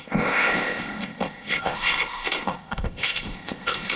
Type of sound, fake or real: fake